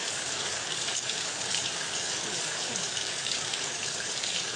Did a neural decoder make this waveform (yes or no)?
yes